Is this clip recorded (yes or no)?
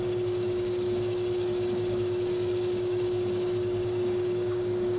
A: no